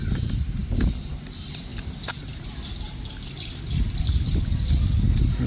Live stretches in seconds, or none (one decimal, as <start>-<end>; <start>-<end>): 0.0-5.5